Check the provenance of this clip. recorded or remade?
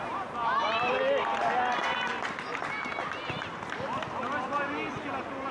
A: recorded